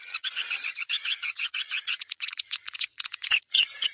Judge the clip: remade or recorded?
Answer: remade